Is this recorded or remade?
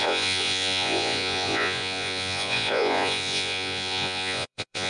remade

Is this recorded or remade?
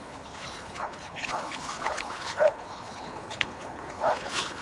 remade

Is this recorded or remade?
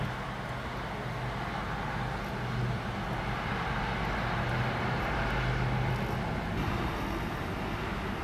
recorded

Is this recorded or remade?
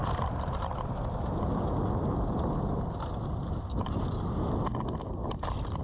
recorded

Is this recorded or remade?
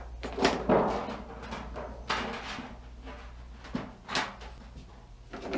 recorded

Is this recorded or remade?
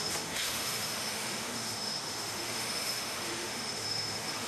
remade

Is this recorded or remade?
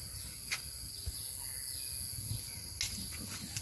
recorded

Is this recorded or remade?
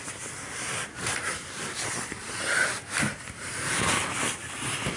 remade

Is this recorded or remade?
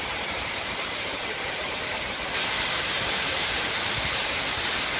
remade